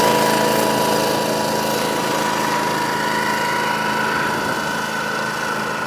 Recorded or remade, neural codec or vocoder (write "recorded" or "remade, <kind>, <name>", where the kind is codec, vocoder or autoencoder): recorded